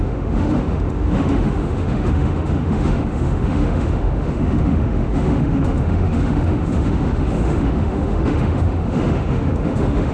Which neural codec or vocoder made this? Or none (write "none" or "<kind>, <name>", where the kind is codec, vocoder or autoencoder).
autoencoder, DAC-VAE